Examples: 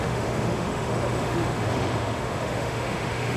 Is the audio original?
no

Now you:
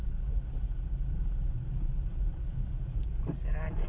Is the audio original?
yes